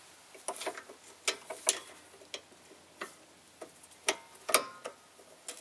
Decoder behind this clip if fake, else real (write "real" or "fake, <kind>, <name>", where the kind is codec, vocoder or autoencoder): real